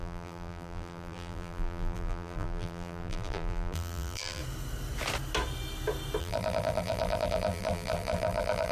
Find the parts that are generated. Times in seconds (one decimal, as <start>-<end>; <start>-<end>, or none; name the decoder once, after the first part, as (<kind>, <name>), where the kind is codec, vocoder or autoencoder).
0.0-4.4 (vocoder, BigVGAN v2); 6.2-8.7